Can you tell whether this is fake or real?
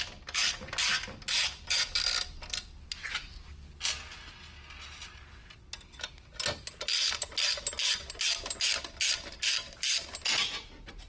real